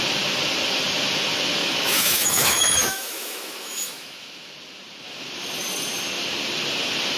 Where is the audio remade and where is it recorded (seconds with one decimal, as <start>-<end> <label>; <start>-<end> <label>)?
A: 0.0-1.6 recorded; 1.6-4.5 remade; 4.5-7.2 recorded